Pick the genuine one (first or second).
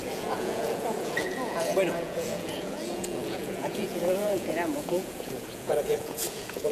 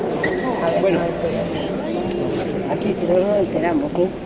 second